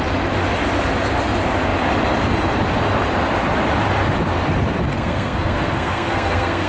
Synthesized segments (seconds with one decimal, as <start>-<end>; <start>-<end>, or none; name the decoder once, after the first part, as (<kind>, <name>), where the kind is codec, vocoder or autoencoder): 4.9-6.7 (codec, SNAC)